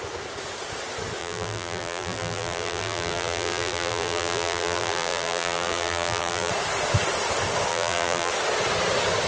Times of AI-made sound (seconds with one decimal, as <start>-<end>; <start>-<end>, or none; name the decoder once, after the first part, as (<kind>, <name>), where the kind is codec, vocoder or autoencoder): 1.2-6.5 (vocoder, BigVGAN v2); 7.7-8.3